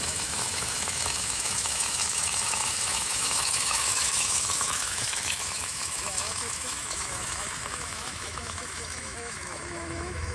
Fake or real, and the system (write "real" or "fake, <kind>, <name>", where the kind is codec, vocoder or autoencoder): fake, autoencoder, DAC-VAE